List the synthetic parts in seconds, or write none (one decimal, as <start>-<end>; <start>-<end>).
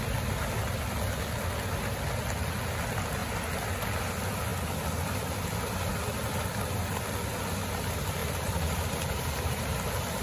8.2-9.7